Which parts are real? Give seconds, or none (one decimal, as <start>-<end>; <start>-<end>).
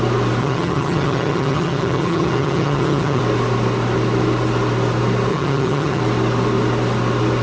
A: 0.0-0.4; 3.2-5.3; 6.0-7.4